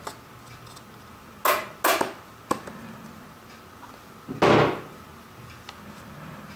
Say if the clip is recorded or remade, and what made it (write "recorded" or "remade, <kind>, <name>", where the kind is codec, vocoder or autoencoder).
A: recorded